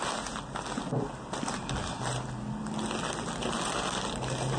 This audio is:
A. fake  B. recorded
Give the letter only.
B